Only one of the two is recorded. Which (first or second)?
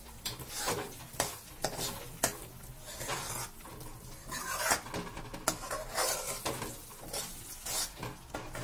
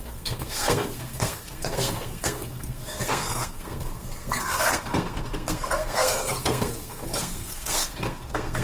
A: first